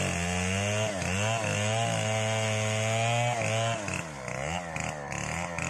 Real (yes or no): yes